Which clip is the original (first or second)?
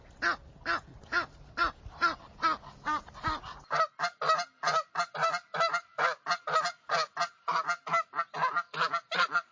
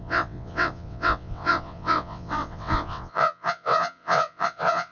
first